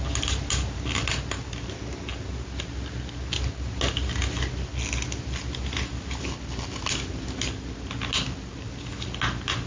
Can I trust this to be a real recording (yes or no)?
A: yes